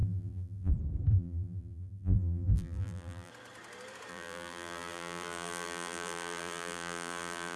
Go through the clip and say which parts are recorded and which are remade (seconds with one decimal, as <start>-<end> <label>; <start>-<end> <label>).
0.0-0.7 remade; 0.7-1.1 recorded; 1.1-3.3 remade; 3.3-4.1 recorded; 4.1-7.6 remade